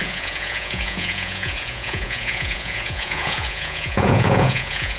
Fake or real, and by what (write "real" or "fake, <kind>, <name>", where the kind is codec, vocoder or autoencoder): fake, vocoder, Vocos